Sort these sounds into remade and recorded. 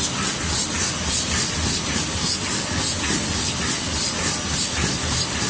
recorded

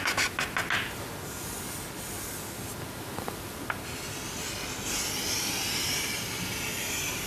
recorded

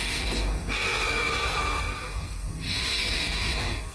remade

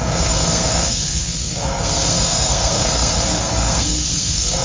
remade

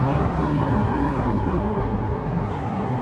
remade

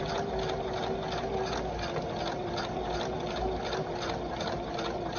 recorded